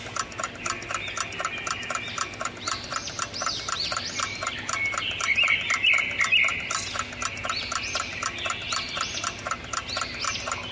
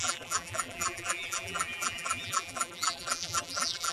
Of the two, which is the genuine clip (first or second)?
first